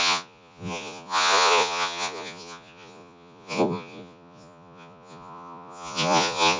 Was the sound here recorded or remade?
remade